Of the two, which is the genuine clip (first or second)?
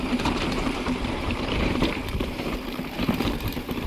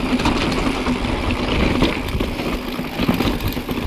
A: second